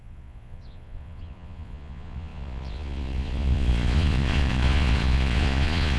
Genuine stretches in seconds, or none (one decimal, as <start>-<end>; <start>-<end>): none